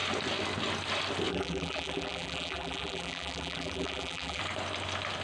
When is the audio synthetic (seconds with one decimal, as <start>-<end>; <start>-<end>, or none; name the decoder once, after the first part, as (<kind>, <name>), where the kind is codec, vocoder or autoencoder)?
1.3-4.4 (vocoder, BigVGAN v2)